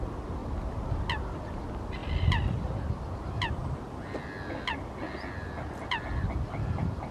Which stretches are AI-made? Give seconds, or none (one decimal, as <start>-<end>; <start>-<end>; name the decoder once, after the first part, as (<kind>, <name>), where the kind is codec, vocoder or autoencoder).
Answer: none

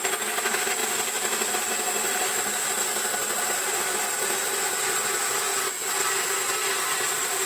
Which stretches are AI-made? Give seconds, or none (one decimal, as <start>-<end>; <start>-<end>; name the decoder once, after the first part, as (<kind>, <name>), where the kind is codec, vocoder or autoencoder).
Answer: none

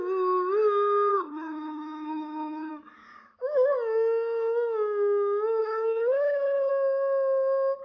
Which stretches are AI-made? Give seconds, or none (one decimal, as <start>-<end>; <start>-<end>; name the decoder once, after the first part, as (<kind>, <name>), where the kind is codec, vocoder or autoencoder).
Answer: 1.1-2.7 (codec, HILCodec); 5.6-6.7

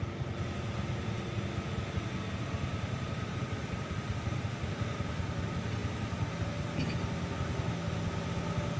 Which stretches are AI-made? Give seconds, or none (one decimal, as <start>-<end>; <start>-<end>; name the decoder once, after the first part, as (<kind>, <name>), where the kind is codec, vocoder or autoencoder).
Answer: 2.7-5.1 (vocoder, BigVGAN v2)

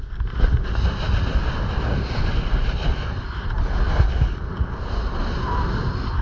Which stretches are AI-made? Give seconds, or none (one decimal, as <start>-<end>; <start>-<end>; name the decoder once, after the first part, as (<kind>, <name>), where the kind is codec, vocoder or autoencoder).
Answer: none

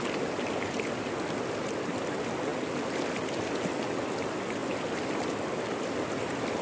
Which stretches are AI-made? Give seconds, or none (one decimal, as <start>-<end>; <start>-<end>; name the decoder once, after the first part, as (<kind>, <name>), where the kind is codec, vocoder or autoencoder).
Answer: none